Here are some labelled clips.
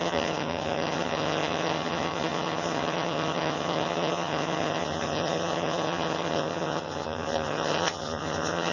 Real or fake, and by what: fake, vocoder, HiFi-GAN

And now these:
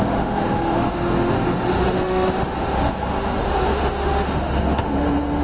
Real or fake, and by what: fake, autoencoder, DAC-VAE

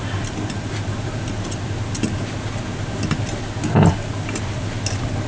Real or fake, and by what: real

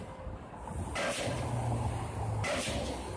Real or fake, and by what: real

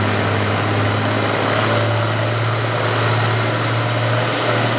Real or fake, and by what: real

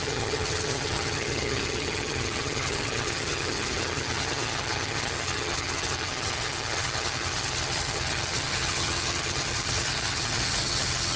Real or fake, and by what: fake, vocoder, HiFi-GAN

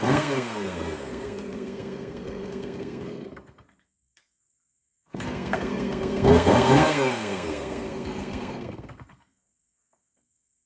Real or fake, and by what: fake, codec, SNAC